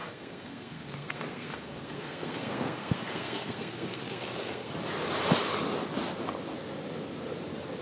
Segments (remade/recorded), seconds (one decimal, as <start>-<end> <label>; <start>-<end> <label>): 0.0-4.7 remade; 4.7-7.8 recorded